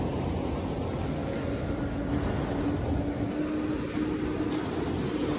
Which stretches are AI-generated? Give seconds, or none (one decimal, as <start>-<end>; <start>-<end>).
none